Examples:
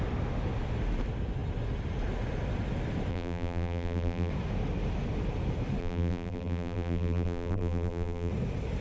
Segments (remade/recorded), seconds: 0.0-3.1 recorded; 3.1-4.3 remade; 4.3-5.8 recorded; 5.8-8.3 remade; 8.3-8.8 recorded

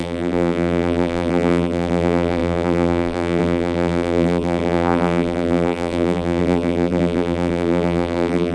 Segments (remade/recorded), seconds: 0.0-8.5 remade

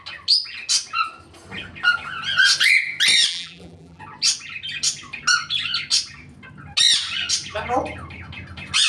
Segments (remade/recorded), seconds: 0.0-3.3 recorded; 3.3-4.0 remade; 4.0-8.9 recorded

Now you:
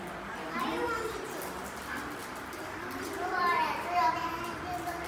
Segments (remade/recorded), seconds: 0.0-2.2 recorded; 2.2-4.3 remade; 4.3-5.1 recorded

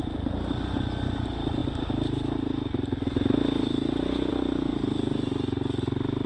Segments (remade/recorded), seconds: 0.0-6.3 recorded

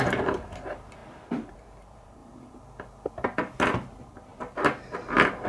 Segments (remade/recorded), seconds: 0.0-1.0 remade; 1.0-1.5 recorded; 1.5-2.2 remade; 2.2-3.6 recorded; 3.6-4.3 remade; 4.3-5.5 recorded

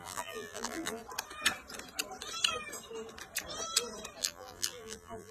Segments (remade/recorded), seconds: 0.0-1.0 remade; 1.0-4.2 recorded; 4.2-5.3 remade